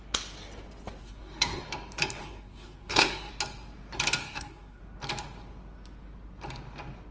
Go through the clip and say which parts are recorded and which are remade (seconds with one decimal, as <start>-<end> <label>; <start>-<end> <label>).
0.0-1.0 recorded; 1.0-1.6 remade; 1.6-2.2 recorded; 2.2-3.3 remade; 3.3-4.2 recorded; 4.2-4.8 remade; 4.8-7.1 recorded